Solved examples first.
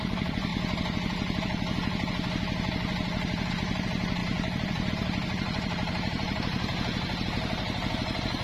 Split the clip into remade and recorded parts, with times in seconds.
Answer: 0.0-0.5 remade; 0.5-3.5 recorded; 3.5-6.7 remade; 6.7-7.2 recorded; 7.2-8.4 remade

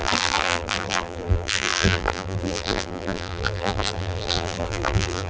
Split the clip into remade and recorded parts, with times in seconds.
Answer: 0.0-5.3 remade